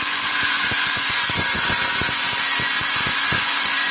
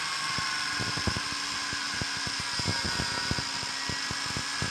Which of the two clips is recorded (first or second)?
second